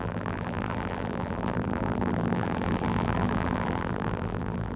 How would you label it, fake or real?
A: fake